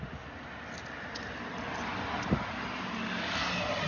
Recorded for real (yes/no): yes